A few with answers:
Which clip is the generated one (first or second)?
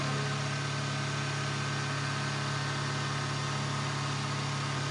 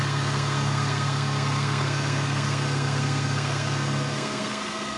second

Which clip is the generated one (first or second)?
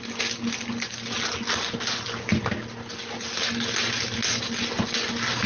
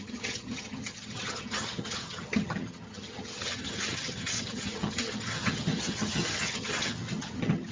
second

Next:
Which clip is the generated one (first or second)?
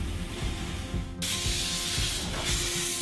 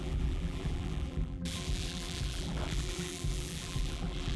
second